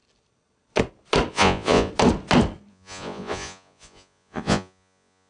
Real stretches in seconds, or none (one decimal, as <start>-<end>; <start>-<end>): 0.0-1.3; 1.9-2.7